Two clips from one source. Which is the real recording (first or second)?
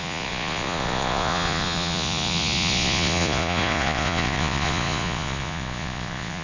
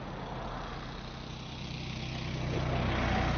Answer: second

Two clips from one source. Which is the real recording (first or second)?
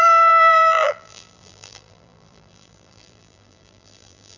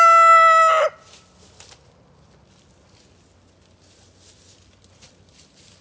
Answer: second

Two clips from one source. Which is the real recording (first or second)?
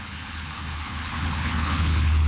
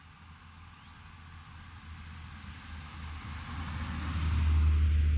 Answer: second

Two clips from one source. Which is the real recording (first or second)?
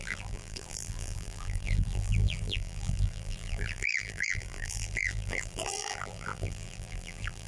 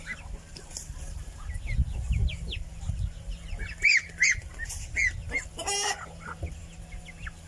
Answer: second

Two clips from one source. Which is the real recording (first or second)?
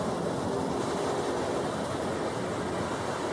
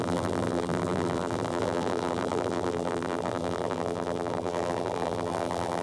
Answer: first